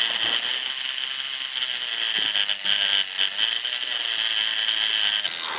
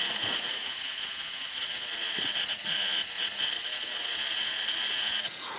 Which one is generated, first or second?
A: second